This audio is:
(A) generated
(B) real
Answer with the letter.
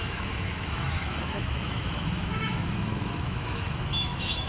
A